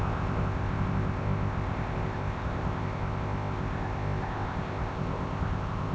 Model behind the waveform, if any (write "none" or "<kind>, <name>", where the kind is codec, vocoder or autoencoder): codec, ZipCodec